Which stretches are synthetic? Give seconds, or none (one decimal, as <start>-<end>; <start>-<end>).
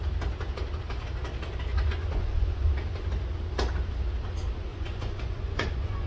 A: 1.7-2.7; 4.7-6.1